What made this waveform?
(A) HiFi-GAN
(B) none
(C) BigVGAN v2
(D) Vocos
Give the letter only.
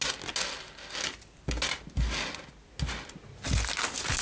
B